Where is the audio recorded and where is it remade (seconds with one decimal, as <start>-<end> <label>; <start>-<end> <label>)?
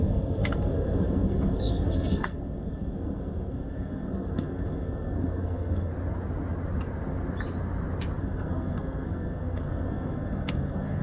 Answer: 0.0-5.9 remade; 5.9-8.2 recorded; 8.2-11.0 remade